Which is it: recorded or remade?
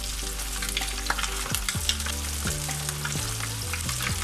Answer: recorded